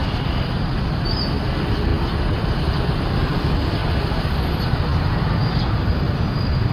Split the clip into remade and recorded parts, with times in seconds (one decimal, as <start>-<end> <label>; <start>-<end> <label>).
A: 0.0-6.7 recorded